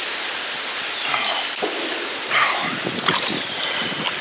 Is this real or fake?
real